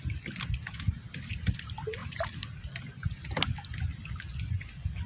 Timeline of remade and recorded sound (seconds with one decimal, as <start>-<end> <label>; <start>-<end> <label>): 0.0-5.1 recorded